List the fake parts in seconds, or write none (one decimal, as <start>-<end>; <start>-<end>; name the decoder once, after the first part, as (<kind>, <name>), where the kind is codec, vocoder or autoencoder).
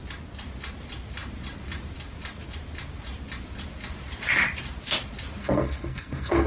5.4-6.5 (codec, SNAC)